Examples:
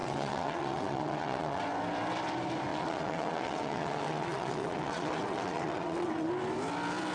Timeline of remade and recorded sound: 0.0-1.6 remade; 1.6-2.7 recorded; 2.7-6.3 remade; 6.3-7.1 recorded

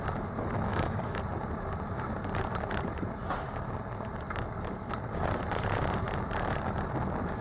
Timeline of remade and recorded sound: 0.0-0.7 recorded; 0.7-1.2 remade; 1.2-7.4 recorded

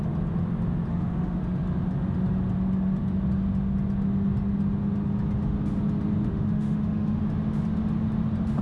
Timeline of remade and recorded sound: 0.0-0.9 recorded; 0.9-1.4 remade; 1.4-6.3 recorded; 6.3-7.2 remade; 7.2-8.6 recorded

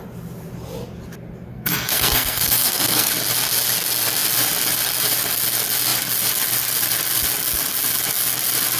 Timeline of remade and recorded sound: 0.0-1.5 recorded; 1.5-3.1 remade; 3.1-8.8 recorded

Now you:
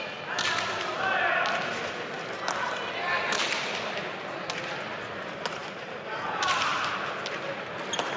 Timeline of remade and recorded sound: 0.0-8.2 recorded